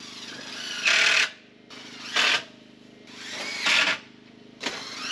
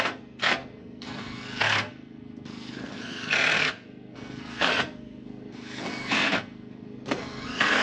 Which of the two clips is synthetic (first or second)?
second